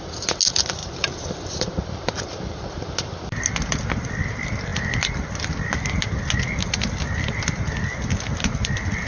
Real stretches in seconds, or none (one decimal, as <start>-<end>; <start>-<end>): 0.0-0.8; 2.9-9.1